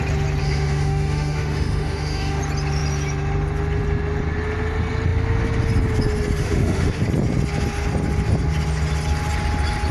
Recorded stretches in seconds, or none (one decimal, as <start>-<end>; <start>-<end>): 0.0-0.4; 2.4-6.4; 7.0-9.9